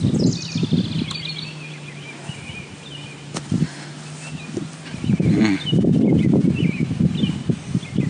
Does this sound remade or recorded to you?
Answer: recorded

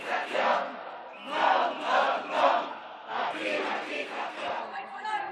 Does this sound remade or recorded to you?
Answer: remade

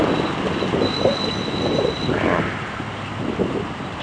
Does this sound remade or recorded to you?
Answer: recorded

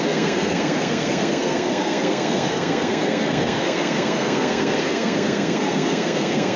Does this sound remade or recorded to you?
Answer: remade